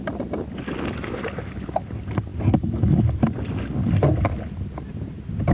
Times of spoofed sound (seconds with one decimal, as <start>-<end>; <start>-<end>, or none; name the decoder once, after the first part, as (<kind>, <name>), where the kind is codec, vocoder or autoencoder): none